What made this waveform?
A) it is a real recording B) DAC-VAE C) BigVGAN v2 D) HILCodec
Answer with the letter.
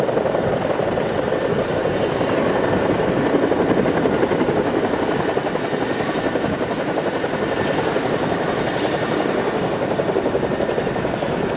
A